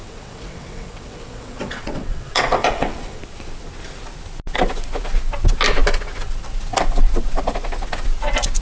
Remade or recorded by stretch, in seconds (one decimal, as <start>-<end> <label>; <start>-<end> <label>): 0.0-3.2 remade; 3.2-8.6 recorded